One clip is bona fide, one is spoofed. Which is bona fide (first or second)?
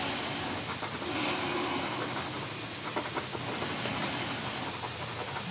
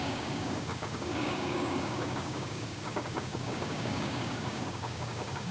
first